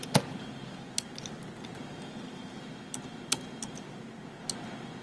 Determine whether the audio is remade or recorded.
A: recorded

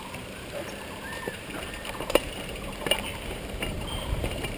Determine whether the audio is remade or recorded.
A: remade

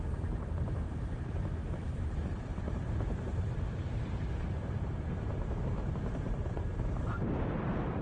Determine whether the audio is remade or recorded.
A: remade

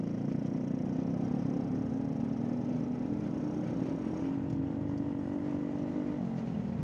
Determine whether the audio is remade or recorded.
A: recorded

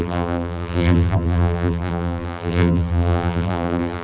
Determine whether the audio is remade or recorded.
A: remade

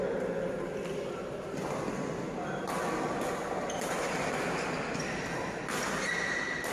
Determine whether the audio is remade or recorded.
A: recorded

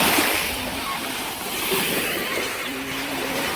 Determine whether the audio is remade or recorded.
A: remade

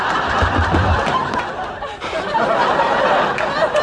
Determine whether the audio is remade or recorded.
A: recorded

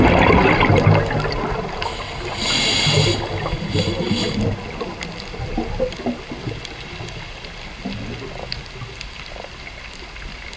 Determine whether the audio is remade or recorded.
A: recorded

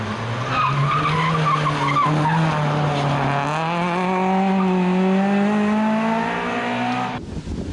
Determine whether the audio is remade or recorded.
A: recorded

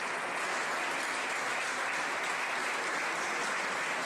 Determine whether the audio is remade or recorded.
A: recorded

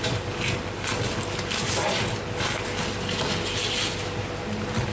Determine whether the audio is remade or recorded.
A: recorded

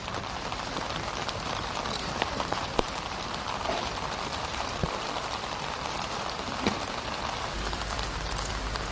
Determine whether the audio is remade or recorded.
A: remade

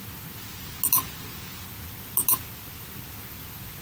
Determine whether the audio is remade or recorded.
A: recorded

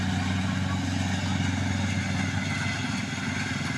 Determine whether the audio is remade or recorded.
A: recorded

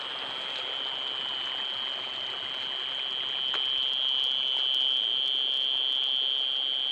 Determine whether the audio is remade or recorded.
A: recorded